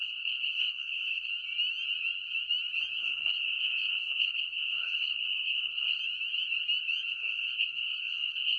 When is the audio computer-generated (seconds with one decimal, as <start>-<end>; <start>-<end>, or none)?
0.0-1.3; 3.0-6.0; 7.1-8.6